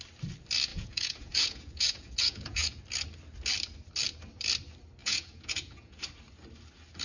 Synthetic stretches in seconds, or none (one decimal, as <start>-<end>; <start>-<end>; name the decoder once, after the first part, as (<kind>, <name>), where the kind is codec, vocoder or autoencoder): 0.7-2.8 (vocoder, Vocos); 5.0-6.0